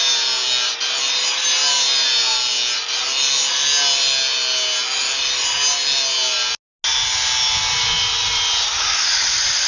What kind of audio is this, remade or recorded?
recorded